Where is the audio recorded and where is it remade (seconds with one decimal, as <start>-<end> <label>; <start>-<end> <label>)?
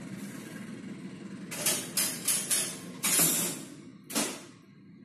0.0-5.0 recorded